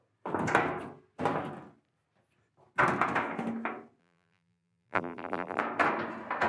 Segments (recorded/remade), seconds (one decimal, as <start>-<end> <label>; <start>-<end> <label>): 0.0-4.0 recorded; 4.0-5.6 remade; 5.6-6.5 recorded